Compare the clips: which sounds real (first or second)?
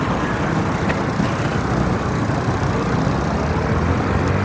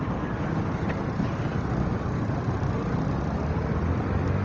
first